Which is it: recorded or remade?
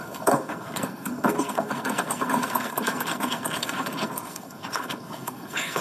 remade